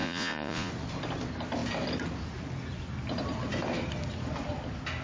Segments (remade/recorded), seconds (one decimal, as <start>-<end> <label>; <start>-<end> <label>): 0.0-0.7 remade; 0.7-5.0 recorded